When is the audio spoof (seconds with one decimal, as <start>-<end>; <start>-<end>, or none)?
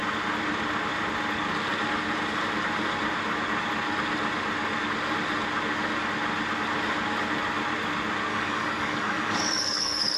8.3-10.2